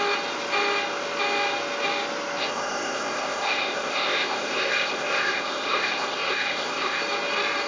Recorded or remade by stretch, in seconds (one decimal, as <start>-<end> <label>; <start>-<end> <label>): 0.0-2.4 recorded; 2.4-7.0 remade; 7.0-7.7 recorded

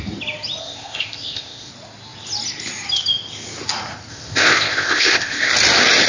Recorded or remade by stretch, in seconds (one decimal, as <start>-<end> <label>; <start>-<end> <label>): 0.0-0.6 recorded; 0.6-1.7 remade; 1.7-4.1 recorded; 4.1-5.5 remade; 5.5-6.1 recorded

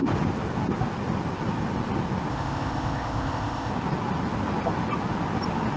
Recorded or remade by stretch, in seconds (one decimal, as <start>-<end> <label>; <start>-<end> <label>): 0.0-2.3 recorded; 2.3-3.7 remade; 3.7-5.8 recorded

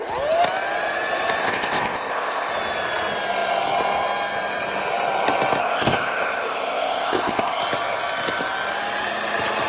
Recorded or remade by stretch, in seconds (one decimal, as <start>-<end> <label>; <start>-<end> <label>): 0.0-1.4 recorded; 1.4-2.5 remade; 2.5-5.6 recorded; 5.6-7.6 remade; 7.6-9.7 recorded

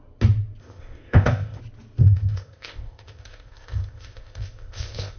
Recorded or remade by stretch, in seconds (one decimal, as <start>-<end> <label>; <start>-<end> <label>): 0.0-0.6 recorded; 0.6-1.6 remade; 1.6-2.0 recorded; 2.0-5.2 remade

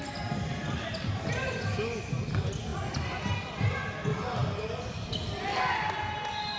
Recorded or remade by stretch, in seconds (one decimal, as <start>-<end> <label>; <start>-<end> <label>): 0.0-6.6 recorded